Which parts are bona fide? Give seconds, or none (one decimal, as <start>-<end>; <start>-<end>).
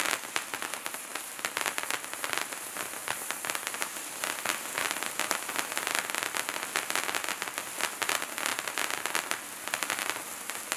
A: 0.0-1.1; 4.2-8.5; 9.0-10.8